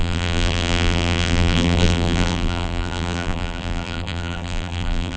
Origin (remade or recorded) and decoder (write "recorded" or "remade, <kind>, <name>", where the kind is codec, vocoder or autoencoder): remade, vocoder, BigVGAN v2